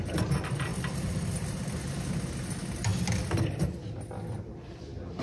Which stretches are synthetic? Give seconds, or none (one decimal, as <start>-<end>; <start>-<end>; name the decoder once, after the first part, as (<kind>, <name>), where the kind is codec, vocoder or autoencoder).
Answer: 0.7-1.8 (vocoder, BigVGAN v2)